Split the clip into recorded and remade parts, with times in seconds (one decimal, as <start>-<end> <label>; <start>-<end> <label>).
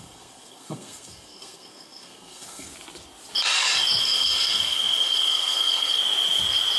0.0-2.7 remade; 2.7-4.0 recorded; 4.0-6.0 remade; 6.0-6.8 recorded